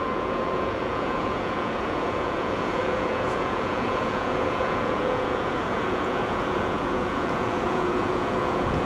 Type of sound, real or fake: fake